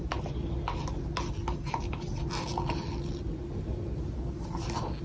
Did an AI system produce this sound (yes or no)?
no